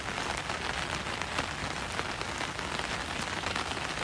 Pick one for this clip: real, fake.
real